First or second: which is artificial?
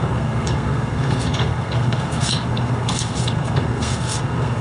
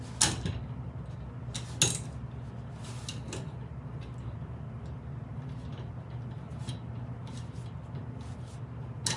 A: first